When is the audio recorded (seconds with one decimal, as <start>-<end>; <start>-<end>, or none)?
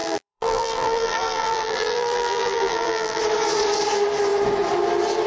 3.2-5.3